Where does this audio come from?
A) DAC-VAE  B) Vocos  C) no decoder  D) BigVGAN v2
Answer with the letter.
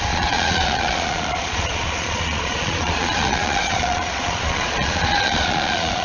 B